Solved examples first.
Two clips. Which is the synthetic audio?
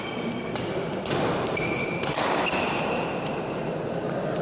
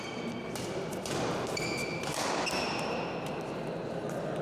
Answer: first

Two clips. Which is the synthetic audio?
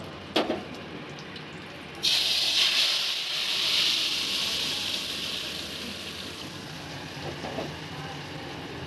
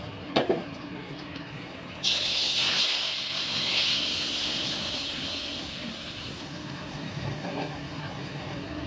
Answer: second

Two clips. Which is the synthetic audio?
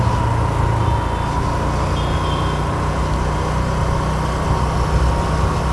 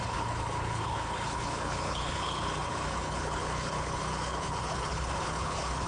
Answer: second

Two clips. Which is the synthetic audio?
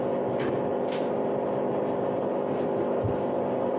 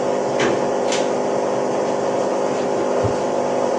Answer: first